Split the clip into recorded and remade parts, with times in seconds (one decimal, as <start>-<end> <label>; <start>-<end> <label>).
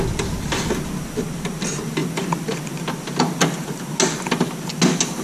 0.0-5.2 recorded